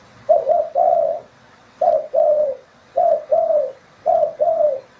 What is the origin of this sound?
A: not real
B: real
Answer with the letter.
A